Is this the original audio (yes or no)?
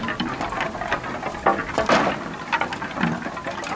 yes